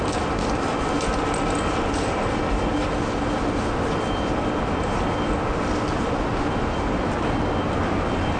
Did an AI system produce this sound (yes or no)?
no